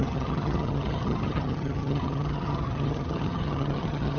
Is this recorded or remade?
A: remade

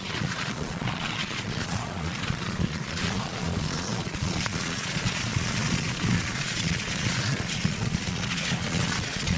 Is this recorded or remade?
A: remade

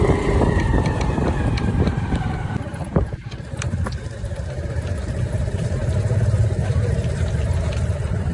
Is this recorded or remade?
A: remade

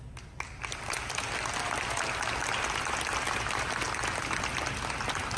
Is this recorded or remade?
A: recorded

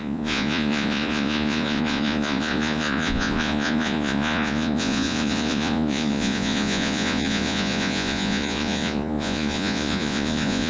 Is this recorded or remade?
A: remade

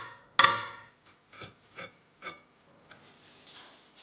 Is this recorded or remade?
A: recorded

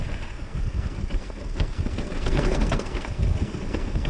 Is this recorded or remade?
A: remade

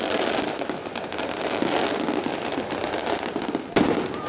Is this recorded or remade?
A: recorded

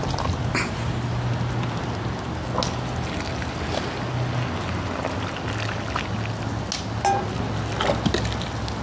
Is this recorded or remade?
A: recorded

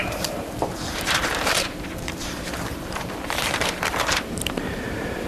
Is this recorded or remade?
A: remade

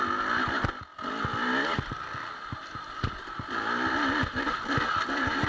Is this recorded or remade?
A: recorded